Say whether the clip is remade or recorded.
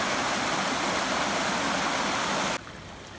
recorded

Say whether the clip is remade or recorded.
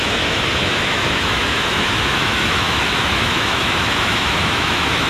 remade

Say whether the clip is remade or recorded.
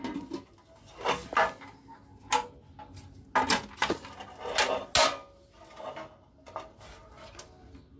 recorded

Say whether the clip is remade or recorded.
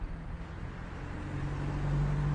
recorded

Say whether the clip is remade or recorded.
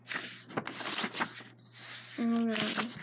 recorded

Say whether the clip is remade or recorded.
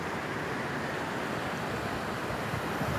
recorded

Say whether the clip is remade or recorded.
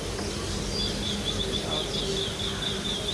recorded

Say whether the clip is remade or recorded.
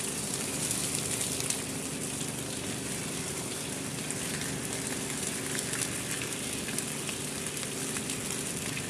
recorded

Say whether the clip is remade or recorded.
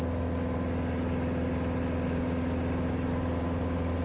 recorded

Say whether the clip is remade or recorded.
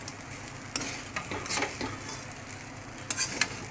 recorded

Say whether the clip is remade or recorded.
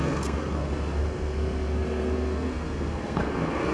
remade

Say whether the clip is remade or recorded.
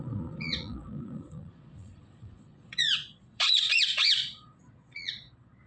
remade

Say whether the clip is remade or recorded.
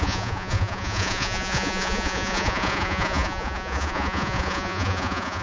remade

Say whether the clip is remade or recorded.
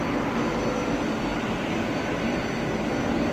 recorded